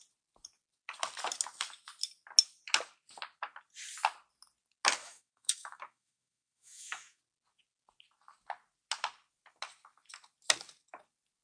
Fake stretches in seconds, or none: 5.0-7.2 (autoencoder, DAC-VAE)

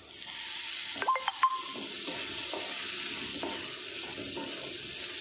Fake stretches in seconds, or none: none